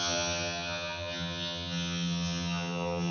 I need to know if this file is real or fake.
fake